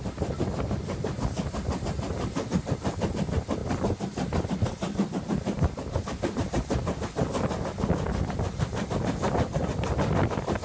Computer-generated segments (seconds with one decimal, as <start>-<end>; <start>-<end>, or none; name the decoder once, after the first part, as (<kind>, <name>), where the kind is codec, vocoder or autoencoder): none